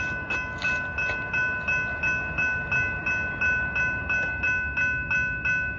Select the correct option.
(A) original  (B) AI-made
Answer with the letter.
A